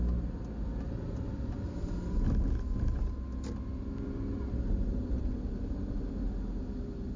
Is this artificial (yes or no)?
no